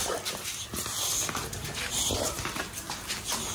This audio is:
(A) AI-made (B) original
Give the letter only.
B